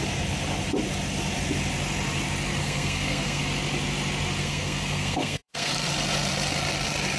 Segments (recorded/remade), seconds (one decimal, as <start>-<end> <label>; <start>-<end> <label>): 0.0-2.6 recorded; 2.6-3.4 remade; 3.4-4.4 recorded; 4.4-5.7 remade; 5.7-7.2 recorded

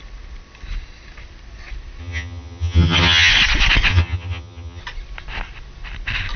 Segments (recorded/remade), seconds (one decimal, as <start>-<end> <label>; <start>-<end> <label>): 0.0-2.0 recorded; 2.0-3.3 remade; 3.3-3.9 recorded; 3.9-4.8 remade; 4.8-6.4 recorded

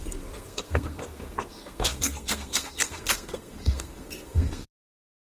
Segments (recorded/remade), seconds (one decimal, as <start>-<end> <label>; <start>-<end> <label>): 0.0-5.3 remade